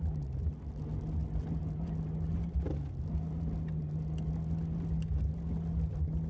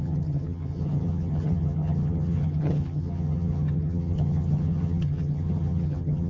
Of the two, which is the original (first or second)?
first